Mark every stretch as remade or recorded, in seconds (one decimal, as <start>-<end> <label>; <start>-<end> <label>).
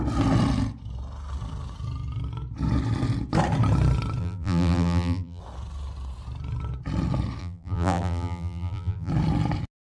0.0-4.2 recorded; 4.2-5.4 remade; 5.4-7.4 recorded; 7.4-9.1 remade; 9.1-9.9 recorded